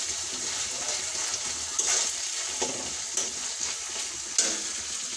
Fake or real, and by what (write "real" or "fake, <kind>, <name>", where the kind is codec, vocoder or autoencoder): real